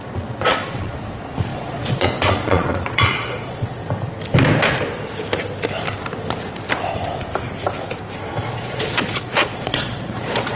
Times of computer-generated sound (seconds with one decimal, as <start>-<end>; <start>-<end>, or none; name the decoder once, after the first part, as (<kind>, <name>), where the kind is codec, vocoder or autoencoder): 0.0-3.8 (vocoder, Vocos); 8.5-10.6